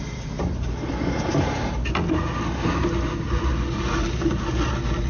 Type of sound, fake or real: real